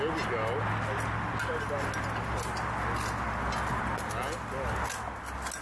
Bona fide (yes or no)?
yes